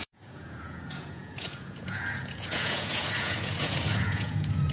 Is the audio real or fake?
fake